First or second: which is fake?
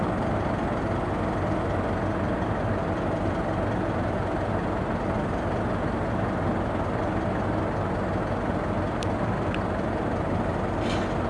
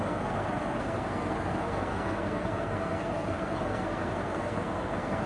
second